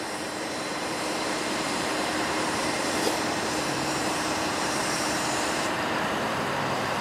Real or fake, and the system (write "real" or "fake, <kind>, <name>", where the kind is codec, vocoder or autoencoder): fake, vocoder, BigVGAN v2